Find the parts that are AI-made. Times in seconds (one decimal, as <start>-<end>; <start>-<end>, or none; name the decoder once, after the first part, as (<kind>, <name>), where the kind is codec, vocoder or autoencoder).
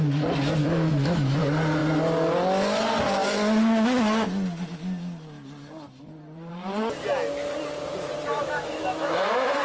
0.6-1.4 (autoencoder, DAC-VAE); 8.3-9.6